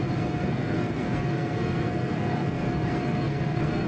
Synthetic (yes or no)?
yes